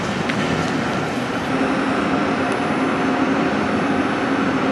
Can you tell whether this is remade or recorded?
recorded